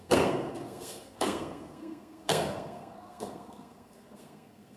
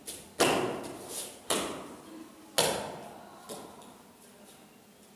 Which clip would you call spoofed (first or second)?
first